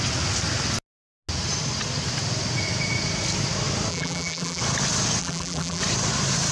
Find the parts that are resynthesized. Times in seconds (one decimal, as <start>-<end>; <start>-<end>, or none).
3.9-4.6; 5.2-5.8